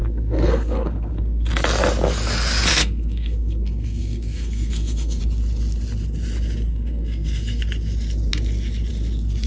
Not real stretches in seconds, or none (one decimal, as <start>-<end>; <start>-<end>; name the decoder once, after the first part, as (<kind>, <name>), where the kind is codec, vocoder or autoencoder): 0.0-1.5 (codec, SNAC); 2.7-5.2; 6.7-7.6